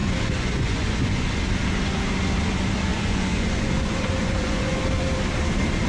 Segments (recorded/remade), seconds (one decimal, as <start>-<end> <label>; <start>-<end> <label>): 0.0-1.4 remade; 1.4-2.9 recorded; 2.9-4.8 remade; 4.8-5.9 recorded